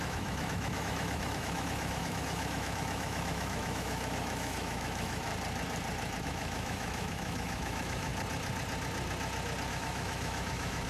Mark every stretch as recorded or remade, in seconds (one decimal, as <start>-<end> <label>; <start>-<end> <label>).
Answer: 0.0-5.3 remade; 5.3-6.2 recorded; 6.2-8.1 remade; 8.1-9.7 recorded; 9.7-10.9 remade